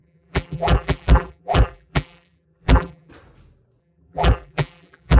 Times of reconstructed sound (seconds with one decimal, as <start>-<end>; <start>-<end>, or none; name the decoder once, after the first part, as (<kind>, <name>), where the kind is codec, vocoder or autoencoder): 0.0-3.1 (vocoder, BigVGAN v2); 3.8-5.2